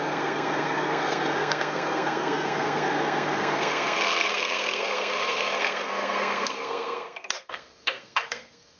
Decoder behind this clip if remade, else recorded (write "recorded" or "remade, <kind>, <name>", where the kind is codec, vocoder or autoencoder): remade, codec, SNAC